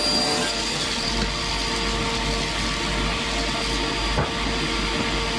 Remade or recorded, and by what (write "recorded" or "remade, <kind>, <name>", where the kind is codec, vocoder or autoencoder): recorded